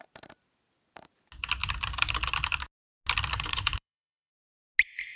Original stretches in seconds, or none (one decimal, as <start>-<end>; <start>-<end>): 0.0-3.3; 4.3-5.2